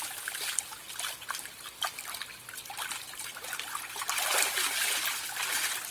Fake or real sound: real